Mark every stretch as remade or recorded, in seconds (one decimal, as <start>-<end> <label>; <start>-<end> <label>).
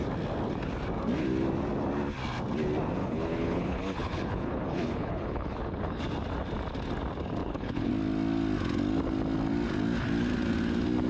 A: 0.0-3.0 recorded; 3.0-6.0 remade; 6.0-7.4 recorded; 7.4-7.9 remade; 7.9-11.1 recorded